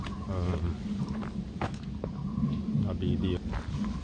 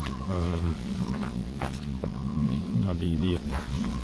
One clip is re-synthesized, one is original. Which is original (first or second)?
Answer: first